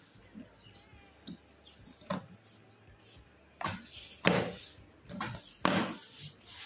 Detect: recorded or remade recorded